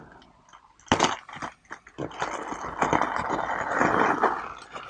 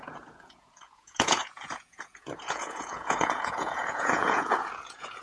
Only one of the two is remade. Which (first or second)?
second